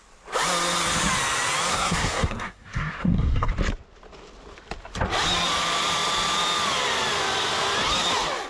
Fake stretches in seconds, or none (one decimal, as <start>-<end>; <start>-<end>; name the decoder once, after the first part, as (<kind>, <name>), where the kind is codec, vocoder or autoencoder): 1.7-3.5 (codec, SNAC)